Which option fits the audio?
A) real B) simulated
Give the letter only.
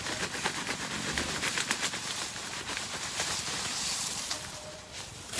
A